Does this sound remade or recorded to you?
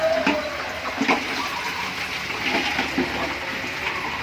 recorded